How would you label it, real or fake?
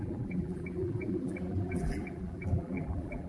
fake